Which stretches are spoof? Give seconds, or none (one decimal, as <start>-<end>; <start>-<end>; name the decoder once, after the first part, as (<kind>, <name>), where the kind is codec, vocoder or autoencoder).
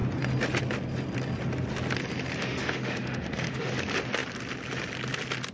2.4-3.7 (autoencoder, DAC-VAE)